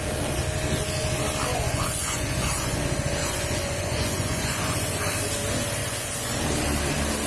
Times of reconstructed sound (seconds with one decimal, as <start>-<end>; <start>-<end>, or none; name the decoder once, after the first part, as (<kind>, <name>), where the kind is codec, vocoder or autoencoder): 1.5-2.8 (vocoder, Vocos); 3.2-5.1; 5.8-6.4